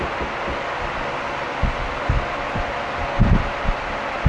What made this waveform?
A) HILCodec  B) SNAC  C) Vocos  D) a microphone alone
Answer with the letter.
D